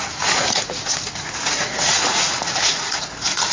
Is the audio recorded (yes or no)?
no